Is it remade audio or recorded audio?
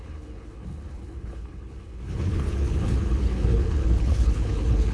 remade